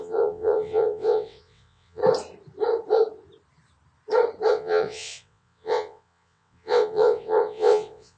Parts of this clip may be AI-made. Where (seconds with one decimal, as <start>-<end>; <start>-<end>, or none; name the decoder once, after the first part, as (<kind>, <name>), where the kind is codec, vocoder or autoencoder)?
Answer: 0.0-2.0 (vocoder, WaveNeXt); 4.5-8.2